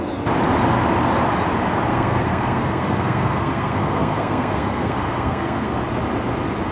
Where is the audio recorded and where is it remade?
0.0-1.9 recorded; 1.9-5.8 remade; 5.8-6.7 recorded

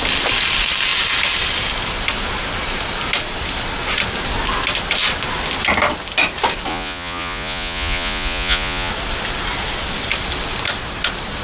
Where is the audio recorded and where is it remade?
0.0-6.7 recorded; 6.7-8.9 remade; 8.9-11.4 recorded

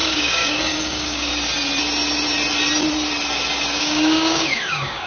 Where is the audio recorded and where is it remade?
0.0-1.3 remade; 1.3-3.8 recorded; 3.8-5.1 remade

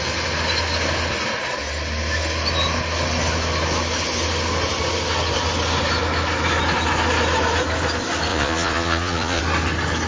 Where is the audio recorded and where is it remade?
0.0-8.3 recorded; 8.3-9.4 remade; 9.4-10.1 recorded

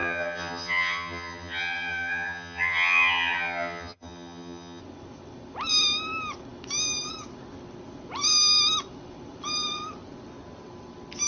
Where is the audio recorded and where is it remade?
0.0-4.8 remade; 4.8-11.3 recorded

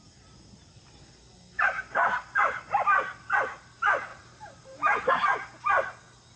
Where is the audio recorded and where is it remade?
0.0-4.1 recorded; 4.1-5.1 remade; 5.1-6.4 recorded